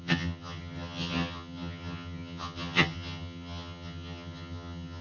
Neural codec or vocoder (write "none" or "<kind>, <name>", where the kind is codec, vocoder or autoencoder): vocoder, HiFi-GAN